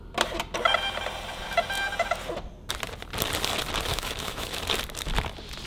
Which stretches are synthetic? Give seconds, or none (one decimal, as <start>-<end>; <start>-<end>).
3.9-4.6